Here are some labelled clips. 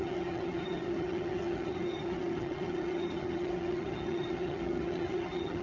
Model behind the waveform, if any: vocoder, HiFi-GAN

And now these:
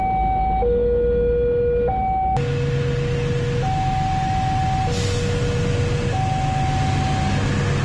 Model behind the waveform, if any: none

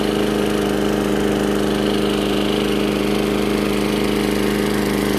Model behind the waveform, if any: none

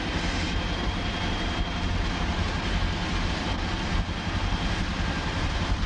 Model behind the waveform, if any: vocoder, BigVGAN v2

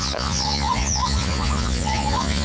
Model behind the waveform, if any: vocoder, Vocos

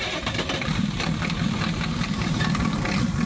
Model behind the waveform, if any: vocoder, BigVGAN v2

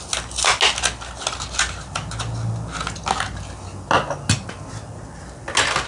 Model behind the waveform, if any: none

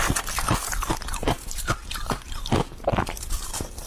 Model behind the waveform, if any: none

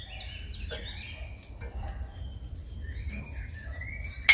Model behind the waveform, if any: none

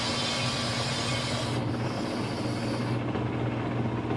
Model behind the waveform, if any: none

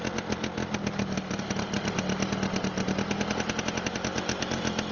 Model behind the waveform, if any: none